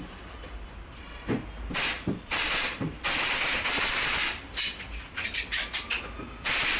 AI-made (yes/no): no